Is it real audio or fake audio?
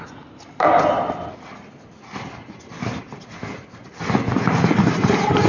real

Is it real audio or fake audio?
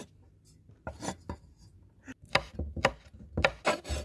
real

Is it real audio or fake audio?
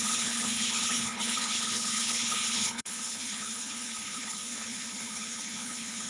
fake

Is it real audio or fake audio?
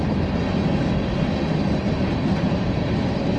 real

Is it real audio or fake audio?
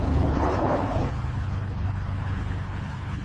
fake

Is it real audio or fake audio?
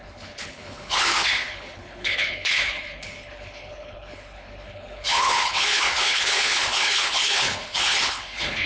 fake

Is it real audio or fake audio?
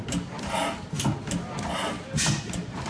real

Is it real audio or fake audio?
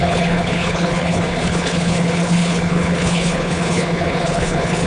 fake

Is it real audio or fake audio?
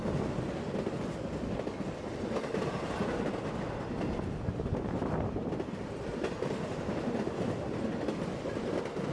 real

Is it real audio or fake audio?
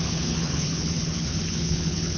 fake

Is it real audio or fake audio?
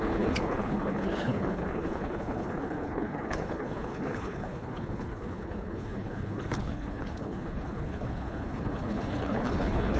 fake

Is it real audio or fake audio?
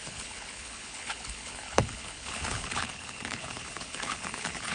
fake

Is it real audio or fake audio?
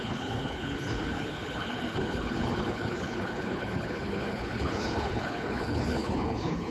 fake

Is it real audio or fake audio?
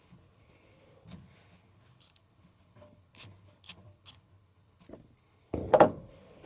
fake